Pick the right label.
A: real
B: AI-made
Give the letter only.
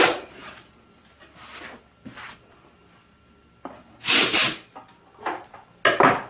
A